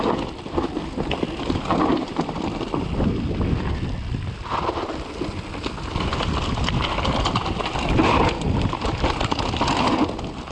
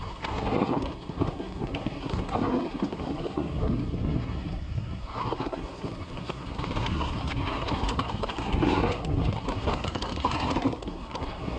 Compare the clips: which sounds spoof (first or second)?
second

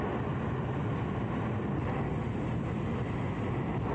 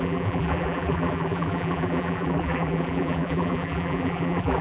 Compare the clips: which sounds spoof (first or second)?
second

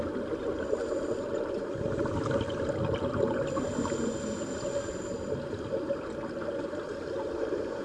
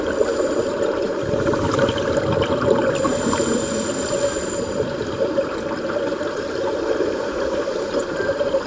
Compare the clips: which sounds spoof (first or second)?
second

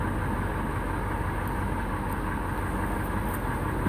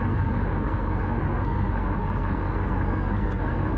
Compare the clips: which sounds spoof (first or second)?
second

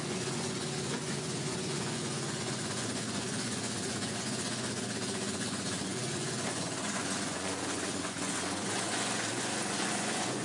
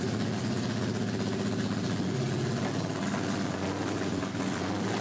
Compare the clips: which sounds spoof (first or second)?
first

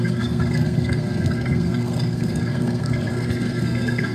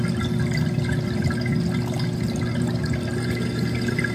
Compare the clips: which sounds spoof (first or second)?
first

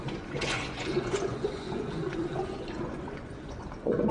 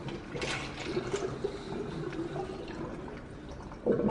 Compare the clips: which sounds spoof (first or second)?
first